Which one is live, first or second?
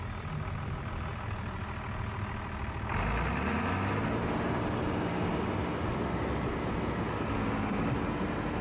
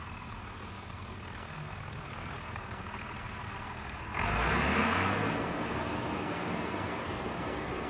first